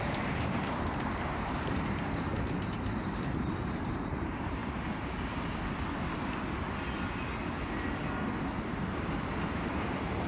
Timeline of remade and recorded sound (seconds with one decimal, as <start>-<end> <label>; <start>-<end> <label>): 0.0-4.6 remade; 4.6-8.6 recorded; 8.6-10.3 remade